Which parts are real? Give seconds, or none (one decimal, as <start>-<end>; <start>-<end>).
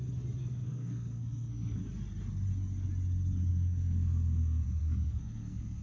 0.0-0.4; 1.8-3.5